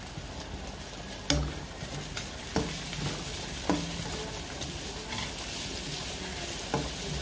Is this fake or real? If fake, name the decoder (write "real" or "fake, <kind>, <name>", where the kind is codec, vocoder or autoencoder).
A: real